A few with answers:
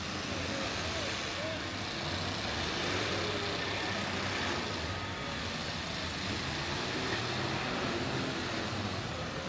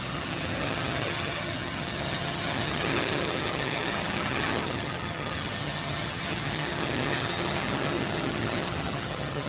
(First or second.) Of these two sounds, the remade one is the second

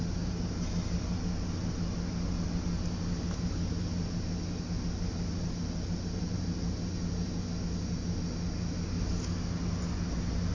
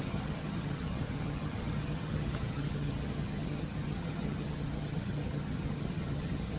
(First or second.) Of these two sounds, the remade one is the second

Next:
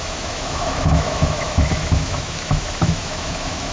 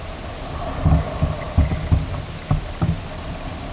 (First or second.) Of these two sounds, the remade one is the first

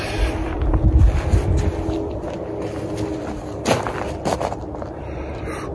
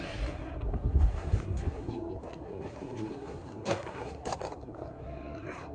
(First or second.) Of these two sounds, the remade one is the second